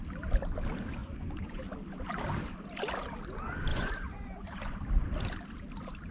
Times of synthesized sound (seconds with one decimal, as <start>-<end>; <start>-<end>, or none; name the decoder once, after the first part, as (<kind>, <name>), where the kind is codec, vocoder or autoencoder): 1.0-1.6 (vocoder, Vocos); 3.7-4.8